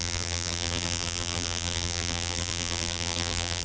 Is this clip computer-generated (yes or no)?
yes